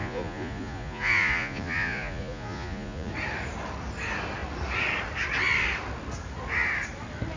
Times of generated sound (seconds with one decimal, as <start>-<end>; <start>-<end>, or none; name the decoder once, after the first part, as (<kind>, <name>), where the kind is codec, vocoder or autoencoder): 0.0-3.1 (vocoder, Vocos)